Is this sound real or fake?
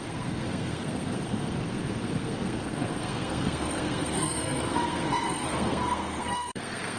fake